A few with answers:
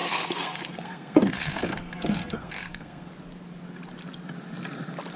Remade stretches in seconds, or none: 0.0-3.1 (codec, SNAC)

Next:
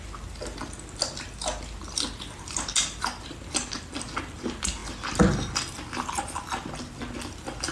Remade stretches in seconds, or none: none